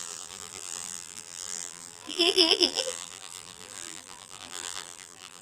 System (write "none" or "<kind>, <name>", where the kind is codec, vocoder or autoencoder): vocoder, BigVGAN v2